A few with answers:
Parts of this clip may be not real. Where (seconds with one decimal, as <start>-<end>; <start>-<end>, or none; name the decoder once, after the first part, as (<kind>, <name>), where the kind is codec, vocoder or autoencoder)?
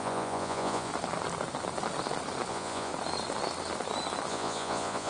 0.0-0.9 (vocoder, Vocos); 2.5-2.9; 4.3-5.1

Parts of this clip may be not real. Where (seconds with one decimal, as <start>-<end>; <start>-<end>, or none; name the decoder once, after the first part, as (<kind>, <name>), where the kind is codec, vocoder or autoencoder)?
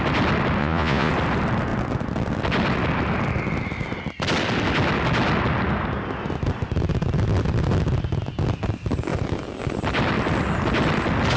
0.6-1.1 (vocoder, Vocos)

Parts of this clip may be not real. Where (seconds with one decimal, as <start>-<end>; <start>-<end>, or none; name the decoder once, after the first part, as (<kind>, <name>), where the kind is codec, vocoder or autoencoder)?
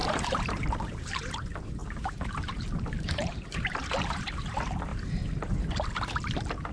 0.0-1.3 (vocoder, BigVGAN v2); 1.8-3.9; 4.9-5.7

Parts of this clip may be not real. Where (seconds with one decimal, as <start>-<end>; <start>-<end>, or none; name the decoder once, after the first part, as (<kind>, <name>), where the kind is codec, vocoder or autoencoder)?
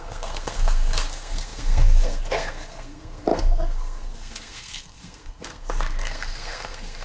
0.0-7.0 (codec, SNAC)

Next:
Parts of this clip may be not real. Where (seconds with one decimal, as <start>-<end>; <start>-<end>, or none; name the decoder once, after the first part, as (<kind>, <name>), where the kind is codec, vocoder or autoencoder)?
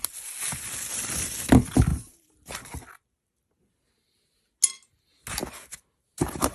1.9-2.5 (vocoder, BigVGAN v2)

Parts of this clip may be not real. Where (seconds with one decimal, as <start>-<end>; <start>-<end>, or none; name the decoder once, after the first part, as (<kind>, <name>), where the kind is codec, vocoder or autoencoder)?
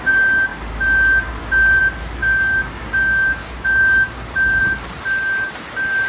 2.2-4.6 (codec, DAC)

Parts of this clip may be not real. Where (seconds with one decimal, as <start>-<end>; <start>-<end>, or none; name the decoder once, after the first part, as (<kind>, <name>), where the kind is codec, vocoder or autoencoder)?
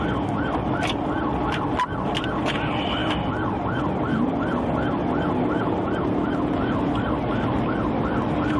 none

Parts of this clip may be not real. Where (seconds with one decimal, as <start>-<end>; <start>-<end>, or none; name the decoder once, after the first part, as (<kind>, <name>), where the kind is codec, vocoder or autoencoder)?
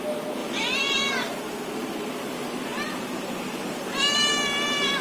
0.4-1.1 (vocoder, BigVGAN v2); 2.7-4.3